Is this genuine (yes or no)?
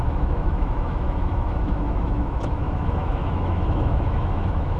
no